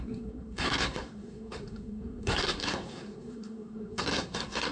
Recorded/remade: remade